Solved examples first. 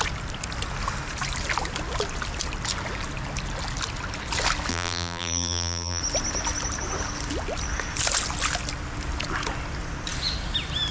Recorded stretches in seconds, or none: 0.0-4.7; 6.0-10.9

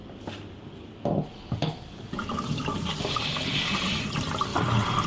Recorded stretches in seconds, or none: 2.3-2.9; 3.7-4.5

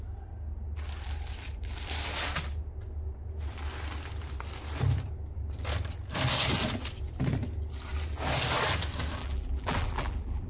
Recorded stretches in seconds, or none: 0.0-9.2

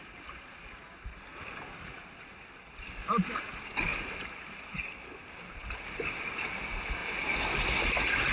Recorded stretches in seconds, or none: 0.0-8.3

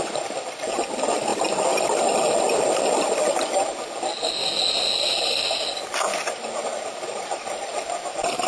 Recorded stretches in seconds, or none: 0.0-8.5